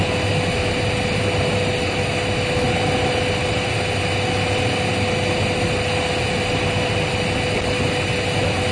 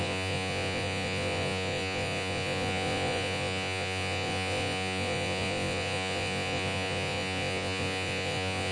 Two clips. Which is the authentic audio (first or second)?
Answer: first